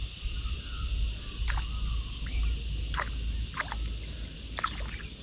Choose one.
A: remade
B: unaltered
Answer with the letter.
B